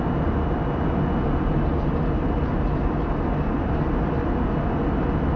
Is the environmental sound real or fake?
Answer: real